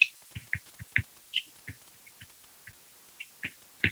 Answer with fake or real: real